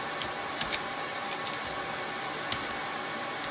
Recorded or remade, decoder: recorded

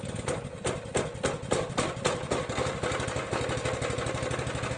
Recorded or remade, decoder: recorded